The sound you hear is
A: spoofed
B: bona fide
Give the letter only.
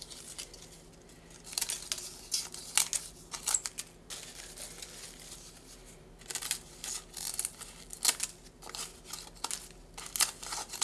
B